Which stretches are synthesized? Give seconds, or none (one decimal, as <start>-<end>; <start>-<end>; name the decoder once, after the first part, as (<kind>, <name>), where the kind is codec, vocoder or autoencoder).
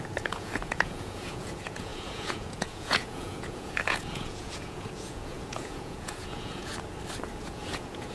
0.0-6.7 (vocoder, Vocos); 7.4-8.1